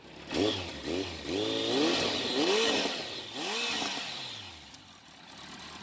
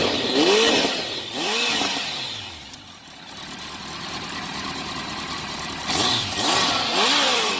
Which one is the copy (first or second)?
second